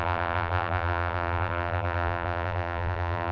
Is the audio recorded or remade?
remade